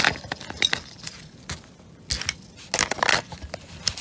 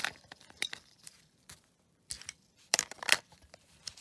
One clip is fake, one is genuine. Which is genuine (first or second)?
first